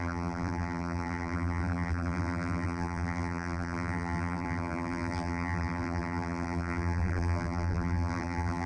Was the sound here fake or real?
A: fake